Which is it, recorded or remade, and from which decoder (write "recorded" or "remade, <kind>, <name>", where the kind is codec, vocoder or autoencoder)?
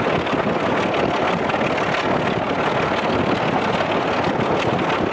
recorded